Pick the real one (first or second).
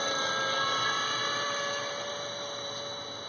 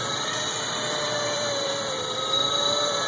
first